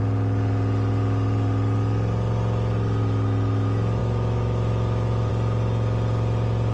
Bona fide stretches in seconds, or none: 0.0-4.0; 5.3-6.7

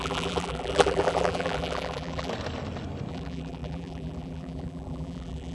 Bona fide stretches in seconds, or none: 2.3-3.1